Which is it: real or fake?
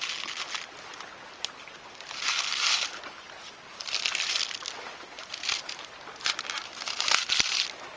real